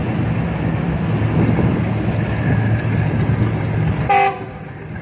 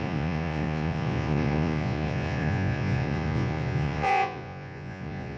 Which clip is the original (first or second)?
first